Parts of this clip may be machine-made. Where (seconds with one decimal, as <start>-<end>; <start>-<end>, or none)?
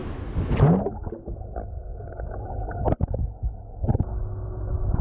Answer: none